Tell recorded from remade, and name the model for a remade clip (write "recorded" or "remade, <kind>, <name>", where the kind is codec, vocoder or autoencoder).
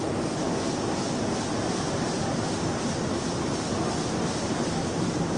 recorded